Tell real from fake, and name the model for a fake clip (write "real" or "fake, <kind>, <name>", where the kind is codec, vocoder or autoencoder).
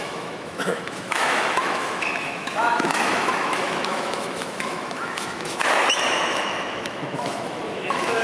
fake, autoencoder, DAC-VAE